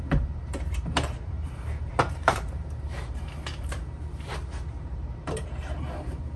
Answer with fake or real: fake